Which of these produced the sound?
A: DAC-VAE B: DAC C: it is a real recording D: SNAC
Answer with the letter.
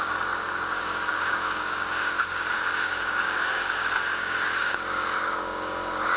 B